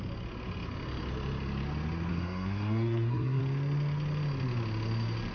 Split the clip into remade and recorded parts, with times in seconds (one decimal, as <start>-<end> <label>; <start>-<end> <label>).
0.0-2.1 recorded; 2.1-3.4 remade; 3.4-5.3 recorded